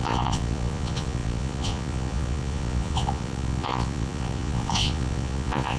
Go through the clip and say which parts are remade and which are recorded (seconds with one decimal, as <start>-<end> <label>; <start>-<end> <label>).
0.0-5.8 remade